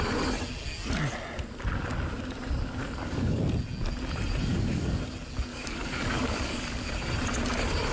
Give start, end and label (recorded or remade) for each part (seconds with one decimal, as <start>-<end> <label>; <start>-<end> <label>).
0.0-2.8 recorded; 2.8-3.4 remade; 3.4-4.5 recorded; 4.5-5.0 remade; 5.0-5.5 recorded; 5.5-6.9 remade; 6.9-7.9 recorded

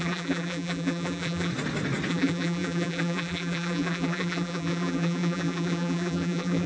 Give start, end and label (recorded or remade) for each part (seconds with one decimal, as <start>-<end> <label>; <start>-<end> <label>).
0.0-1.5 remade; 1.5-2.1 recorded; 2.1-6.7 remade

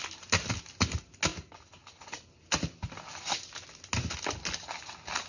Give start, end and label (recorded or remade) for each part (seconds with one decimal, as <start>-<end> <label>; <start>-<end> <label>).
0.0-5.3 recorded

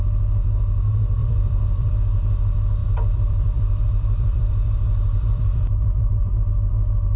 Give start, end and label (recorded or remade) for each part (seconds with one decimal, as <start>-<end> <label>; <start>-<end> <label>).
0.0-1.2 recorded; 1.2-1.9 remade; 1.9-2.8 recorded; 2.8-6.3 remade; 6.3-7.2 recorded

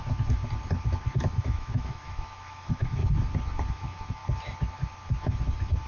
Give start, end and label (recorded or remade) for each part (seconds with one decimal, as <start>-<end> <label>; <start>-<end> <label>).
0.0-0.4 remade; 0.4-1.2 recorded; 1.2-3.0 remade; 3.0-3.7 recorded; 3.7-4.2 remade; 4.2-5.9 recorded

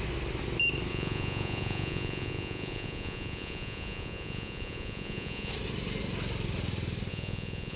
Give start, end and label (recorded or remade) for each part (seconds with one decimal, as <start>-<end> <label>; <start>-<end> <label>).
0.0-0.9 recorded; 0.9-5.5 remade; 5.5-7.1 recorded; 7.1-7.8 remade